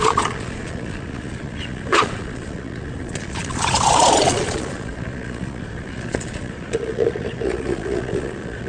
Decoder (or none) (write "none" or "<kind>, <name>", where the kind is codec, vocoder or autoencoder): vocoder, Vocos